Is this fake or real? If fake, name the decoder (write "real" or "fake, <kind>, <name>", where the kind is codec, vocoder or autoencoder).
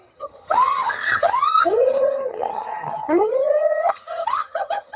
fake, vocoder, HiFi-GAN